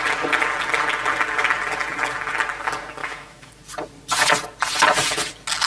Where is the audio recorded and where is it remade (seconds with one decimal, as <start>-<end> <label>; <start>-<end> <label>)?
0.0-3.0 recorded; 3.0-3.5 remade; 3.5-5.7 recorded